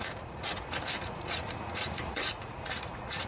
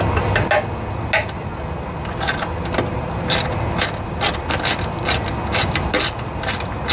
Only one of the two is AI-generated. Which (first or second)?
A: first